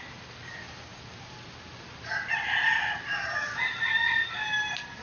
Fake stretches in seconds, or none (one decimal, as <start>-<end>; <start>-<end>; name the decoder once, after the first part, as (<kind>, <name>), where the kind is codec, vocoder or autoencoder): none